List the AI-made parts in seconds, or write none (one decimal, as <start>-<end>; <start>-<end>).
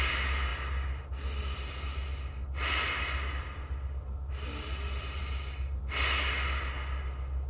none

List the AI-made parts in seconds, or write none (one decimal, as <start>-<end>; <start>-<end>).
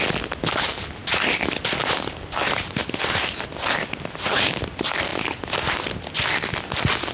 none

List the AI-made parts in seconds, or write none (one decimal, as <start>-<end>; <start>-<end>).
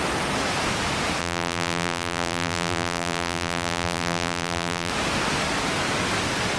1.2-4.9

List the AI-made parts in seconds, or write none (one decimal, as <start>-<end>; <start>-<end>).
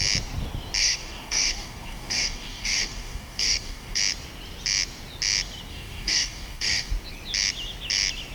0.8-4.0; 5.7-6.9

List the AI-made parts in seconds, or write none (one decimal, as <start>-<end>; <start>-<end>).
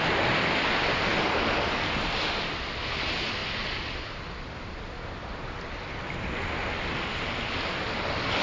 none